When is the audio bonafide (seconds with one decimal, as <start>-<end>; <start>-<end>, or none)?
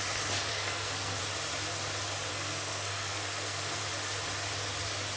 0.0-0.5; 1.2-2.3; 3.8-5.2